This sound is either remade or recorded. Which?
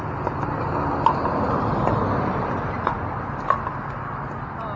recorded